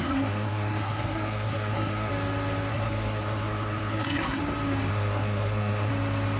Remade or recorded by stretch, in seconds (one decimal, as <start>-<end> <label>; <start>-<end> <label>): 0.0-2.1 remade; 2.1-2.7 recorded; 2.7-4.4 remade; 4.4-4.9 recorded; 4.9-5.9 remade; 5.9-6.4 recorded